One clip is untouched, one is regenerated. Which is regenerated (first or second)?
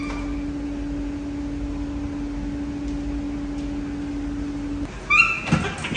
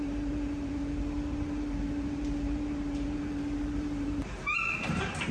second